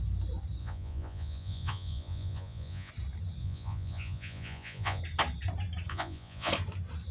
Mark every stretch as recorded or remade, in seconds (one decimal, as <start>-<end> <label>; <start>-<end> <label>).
0.0-0.6 recorded; 0.6-2.9 remade; 2.9-3.4 recorded; 3.4-5.0 remade; 5.0-5.9 recorded; 5.9-6.5 remade; 6.5-7.1 recorded